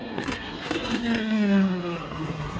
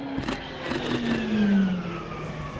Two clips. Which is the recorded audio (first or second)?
second